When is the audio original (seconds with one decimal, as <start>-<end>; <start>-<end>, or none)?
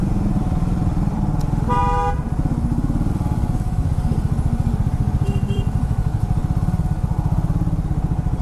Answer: 1.8-3.1; 3.8-4.8; 6.4-8.4